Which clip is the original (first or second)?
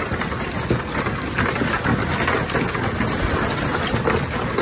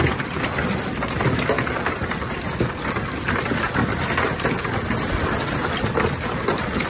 first